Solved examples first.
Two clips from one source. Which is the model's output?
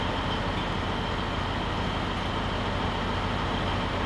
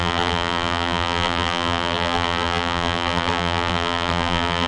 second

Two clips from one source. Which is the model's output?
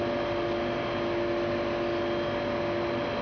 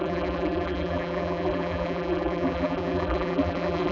second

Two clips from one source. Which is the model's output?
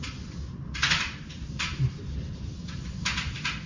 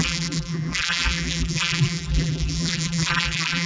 second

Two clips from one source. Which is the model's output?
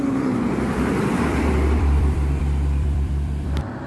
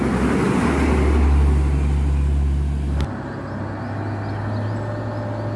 first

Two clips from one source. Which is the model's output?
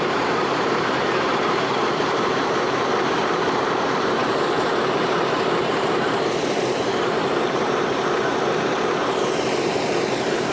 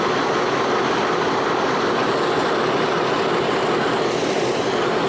first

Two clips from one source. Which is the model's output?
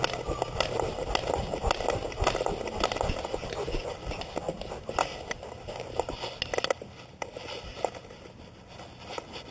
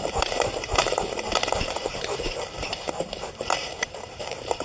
second